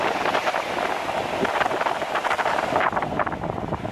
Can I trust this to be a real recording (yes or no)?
yes